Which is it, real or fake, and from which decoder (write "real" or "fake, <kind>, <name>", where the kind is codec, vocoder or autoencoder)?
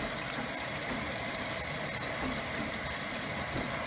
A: real